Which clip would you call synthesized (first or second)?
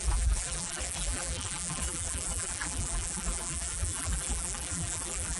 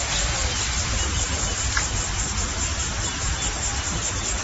first